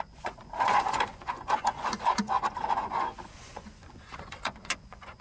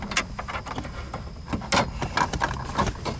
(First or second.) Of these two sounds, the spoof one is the first